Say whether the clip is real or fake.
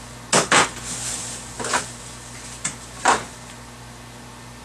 real